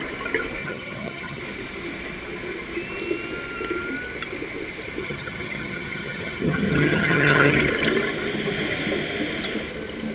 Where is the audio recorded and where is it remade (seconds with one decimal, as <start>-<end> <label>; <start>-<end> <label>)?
0.0-0.6 recorded; 0.6-1.4 remade; 1.4-5.0 recorded; 5.0-7.5 remade; 7.5-10.1 recorded